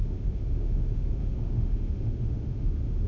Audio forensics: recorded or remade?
remade